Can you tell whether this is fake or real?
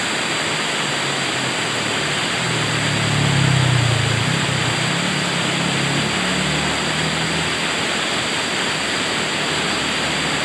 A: real